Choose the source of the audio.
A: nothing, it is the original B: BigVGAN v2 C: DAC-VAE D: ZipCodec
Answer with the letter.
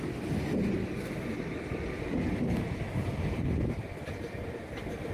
A